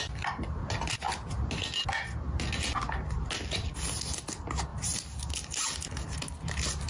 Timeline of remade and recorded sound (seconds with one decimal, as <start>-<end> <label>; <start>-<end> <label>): 0.0-6.9 recorded